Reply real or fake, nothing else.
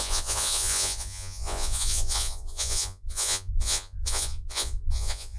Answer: fake